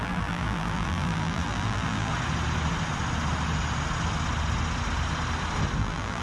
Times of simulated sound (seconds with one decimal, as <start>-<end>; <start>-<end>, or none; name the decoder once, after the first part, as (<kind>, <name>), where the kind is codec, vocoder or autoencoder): 0.0-2.1 (vocoder, BigVGAN v2); 5.8-6.2